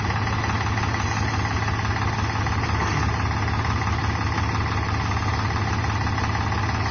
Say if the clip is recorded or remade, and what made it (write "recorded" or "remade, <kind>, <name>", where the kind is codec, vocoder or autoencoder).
recorded